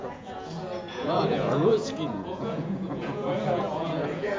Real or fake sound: fake